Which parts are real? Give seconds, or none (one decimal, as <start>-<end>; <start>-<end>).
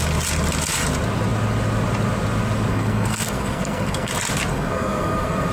0.0-2.7; 4.1-4.5